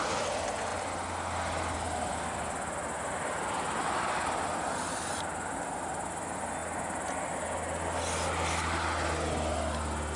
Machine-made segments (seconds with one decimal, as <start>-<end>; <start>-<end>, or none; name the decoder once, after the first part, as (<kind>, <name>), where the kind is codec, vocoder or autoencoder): none